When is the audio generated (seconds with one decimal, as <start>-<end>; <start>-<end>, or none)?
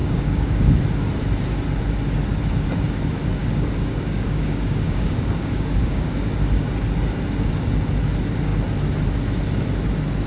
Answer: 0.0-0.8; 3.4-6.7